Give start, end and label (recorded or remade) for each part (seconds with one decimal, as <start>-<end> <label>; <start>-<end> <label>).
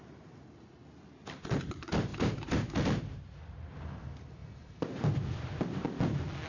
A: 0.0-2.1 recorded; 2.1-2.7 remade; 2.7-4.4 recorded; 4.4-5.1 remade; 5.1-6.5 recorded